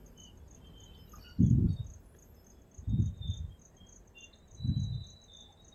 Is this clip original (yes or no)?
yes